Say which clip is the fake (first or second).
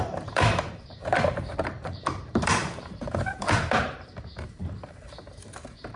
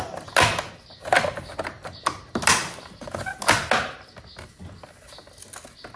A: first